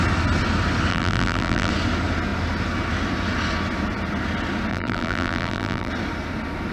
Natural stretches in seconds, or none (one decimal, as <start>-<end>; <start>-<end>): 0.0-0.9; 1.7-4.7; 5.9-6.7